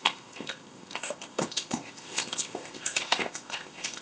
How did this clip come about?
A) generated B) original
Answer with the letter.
A